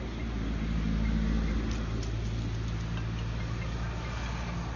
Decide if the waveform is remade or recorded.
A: recorded